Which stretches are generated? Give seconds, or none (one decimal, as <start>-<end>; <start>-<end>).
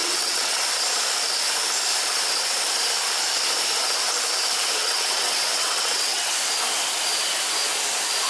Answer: 0.0-0.5; 4.8-6.3